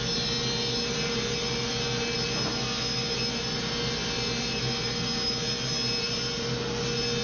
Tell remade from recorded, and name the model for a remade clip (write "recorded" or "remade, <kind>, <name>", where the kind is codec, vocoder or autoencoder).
recorded